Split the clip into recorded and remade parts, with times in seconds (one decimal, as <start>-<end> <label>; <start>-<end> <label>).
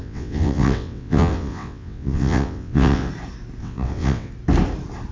0.0-3.1 remade; 3.1-3.6 recorded; 3.6-4.3 remade; 4.3-5.1 recorded